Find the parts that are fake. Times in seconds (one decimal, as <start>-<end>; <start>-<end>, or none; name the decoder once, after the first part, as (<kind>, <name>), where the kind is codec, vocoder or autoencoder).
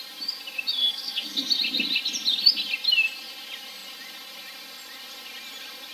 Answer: 0.8-1.5 (codec, SNAC)